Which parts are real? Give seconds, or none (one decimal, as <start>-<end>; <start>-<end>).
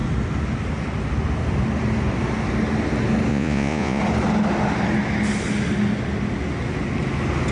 0.0-3.3; 4.0-7.5